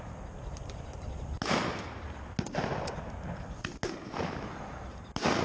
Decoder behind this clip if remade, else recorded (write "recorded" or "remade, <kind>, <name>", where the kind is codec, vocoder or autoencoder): recorded